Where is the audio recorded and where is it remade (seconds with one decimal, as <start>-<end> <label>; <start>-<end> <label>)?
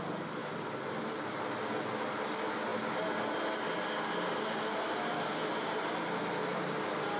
0.0-7.2 recorded